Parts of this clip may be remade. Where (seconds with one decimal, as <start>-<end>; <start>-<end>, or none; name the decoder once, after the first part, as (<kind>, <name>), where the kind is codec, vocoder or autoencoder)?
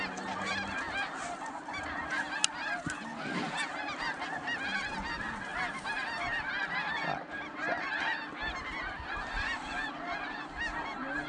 5.5-9.9 (vocoder, BigVGAN v2)